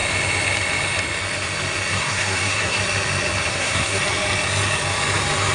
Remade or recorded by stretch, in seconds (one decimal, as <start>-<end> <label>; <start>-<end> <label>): 0.0-1.9 recorded; 1.9-2.8 remade; 2.8-3.5 recorded; 3.5-4.0 remade; 4.0-5.5 recorded

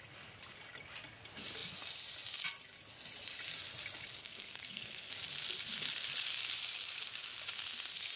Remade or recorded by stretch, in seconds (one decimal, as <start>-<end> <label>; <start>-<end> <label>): 0.0-4.2 recorded; 4.2-5.1 remade; 5.1-8.2 recorded